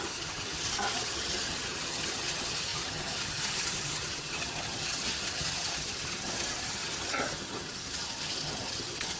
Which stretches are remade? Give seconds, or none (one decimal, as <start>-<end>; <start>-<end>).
0.0-9.2